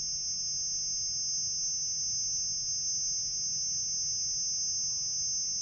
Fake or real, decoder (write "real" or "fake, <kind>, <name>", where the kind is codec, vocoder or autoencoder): real